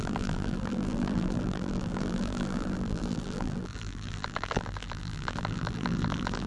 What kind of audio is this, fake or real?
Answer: fake